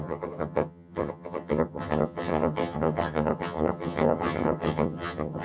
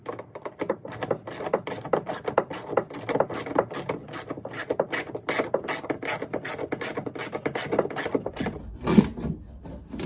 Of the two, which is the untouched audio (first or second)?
second